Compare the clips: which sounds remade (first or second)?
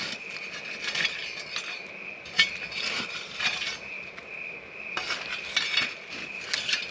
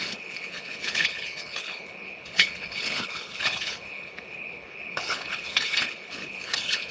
second